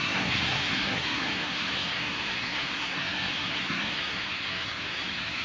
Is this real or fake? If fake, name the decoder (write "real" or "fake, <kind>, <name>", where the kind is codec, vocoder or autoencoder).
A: fake, codec, SNAC